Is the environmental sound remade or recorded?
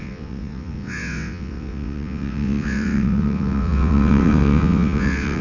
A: remade